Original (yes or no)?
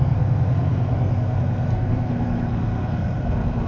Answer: no